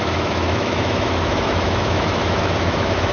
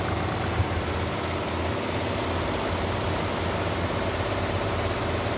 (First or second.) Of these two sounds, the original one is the second